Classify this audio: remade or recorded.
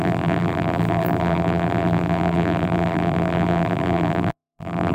remade